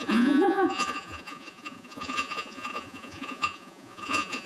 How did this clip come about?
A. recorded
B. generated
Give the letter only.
B